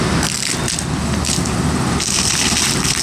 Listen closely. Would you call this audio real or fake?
real